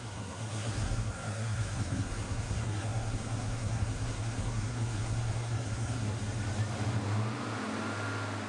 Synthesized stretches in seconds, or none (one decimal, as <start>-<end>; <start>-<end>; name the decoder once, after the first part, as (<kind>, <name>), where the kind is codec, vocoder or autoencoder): 0.0-6.2 (codec, SNAC)